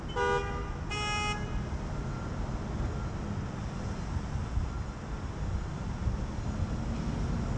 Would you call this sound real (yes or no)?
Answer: yes